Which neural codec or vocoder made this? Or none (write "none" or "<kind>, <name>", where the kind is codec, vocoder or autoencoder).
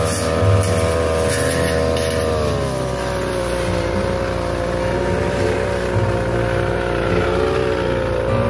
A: none